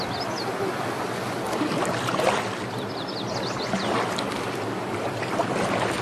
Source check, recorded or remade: recorded